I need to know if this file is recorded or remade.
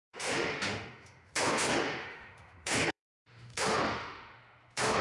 remade